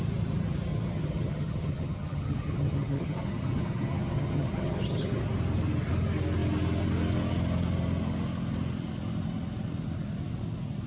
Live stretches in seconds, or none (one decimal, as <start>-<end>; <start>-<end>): 0.0-0.7; 5.2-10.9